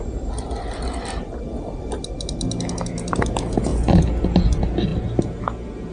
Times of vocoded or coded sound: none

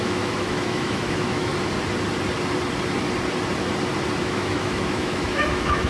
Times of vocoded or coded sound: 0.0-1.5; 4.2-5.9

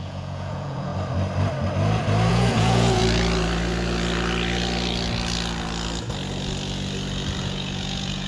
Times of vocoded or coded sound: 0.0-0.9; 2.3-3.0; 7.4-8.3

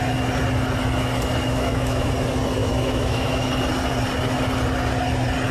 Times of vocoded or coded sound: 1.4-2.1; 2.6-3.5

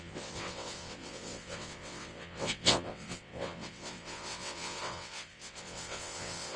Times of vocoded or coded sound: 0.0-6.6